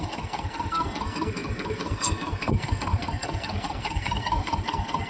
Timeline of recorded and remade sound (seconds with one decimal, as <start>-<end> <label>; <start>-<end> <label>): 0.0-5.1 remade